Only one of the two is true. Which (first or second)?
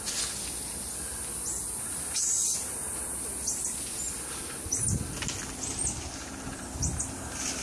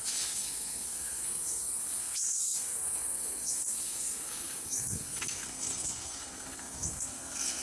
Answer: first